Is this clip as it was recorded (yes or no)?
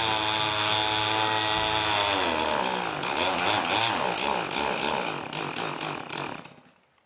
yes